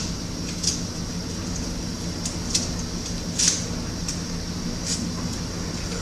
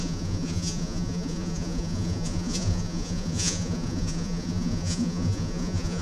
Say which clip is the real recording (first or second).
first